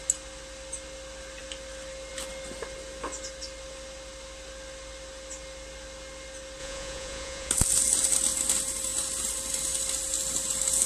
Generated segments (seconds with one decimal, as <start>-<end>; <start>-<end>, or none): 6.6-7.5